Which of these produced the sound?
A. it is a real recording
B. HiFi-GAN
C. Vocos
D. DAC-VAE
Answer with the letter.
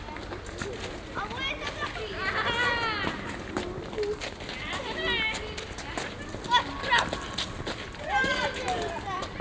A